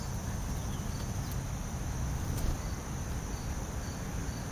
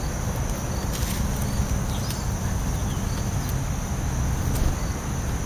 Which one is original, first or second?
second